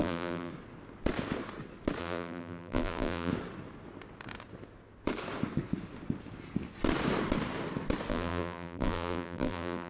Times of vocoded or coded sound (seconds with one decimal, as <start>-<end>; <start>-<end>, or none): 0.0-0.5; 2.0-3.3; 8.1-9.9